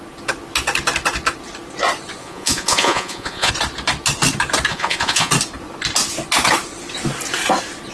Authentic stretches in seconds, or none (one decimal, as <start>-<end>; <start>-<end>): 0.0-2.2; 3.5-4.7; 5.3-7.9